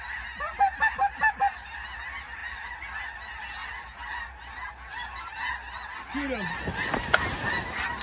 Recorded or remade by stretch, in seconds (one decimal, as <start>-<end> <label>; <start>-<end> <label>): 0.0-2.4 recorded; 2.4-3.0 remade; 3.0-8.0 recorded